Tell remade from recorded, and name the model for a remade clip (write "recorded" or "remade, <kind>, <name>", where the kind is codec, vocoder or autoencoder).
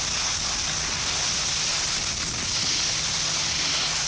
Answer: recorded